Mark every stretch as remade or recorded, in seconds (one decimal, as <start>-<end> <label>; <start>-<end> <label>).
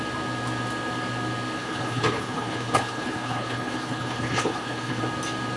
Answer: 0.0-1.6 recorded; 1.6-5.0 remade; 5.0-5.6 recorded